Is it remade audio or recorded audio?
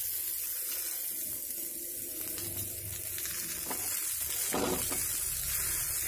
recorded